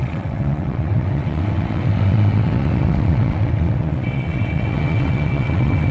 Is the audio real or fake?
fake